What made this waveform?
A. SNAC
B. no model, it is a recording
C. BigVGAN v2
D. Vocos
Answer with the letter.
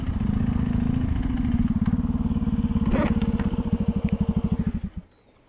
B